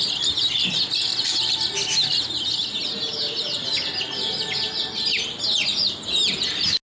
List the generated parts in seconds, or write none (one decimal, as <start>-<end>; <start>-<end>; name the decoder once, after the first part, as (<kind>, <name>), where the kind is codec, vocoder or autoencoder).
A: none